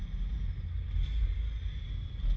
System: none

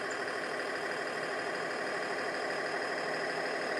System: none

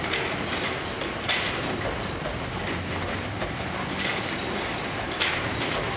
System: none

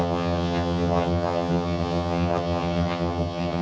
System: vocoder, HiFi-GAN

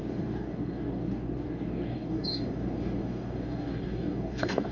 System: codec, DAC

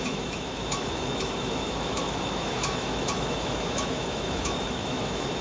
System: autoencoder, DAC-VAE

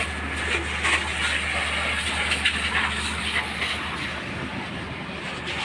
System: none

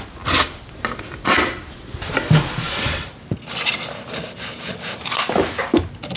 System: none